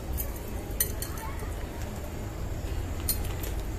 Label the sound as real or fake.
real